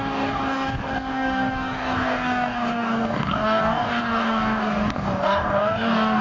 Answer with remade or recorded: remade